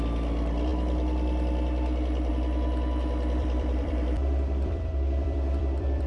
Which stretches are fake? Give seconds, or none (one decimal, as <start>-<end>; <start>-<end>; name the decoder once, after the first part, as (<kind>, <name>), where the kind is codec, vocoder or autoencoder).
3.4-6.1 (vocoder, BigVGAN v2)